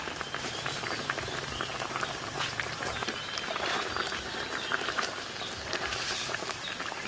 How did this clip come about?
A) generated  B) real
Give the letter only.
A